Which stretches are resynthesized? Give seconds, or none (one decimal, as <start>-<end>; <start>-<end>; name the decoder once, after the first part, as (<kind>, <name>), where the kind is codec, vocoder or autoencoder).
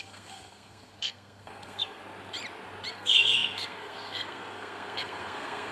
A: 0.0-2.0 (codec, SNAC); 2.9-5.7